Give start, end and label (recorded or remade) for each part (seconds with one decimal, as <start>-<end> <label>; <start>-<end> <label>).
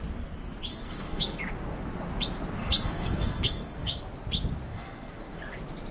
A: 0.0-0.7 recorded; 0.7-1.4 remade; 1.4-2.6 recorded; 2.6-4.0 remade; 4.0-4.7 recorded; 4.7-5.4 remade; 5.4-5.9 recorded